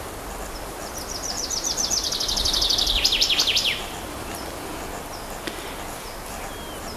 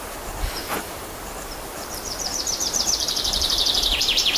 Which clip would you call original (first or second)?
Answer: first